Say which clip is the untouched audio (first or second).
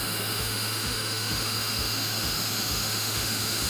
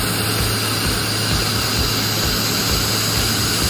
second